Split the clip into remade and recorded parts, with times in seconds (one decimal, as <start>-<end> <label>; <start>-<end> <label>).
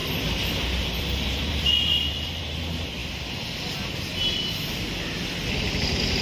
0.0-2.4 remade; 2.4-3.0 recorded; 3.0-3.6 remade; 3.6-6.2 recorded